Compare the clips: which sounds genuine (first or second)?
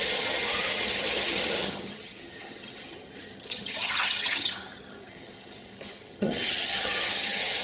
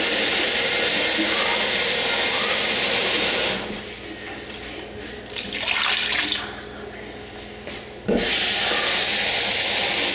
second